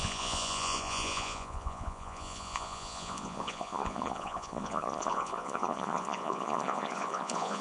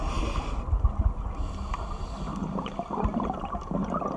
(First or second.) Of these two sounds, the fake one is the first